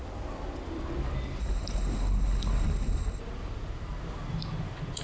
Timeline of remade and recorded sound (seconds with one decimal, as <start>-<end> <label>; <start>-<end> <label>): 0.0-1.4 recorded; 1.4-3.2 remade; 3.2-5.0 recorded